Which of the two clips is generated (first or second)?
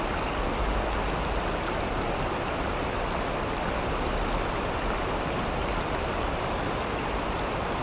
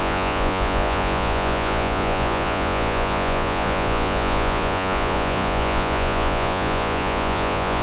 second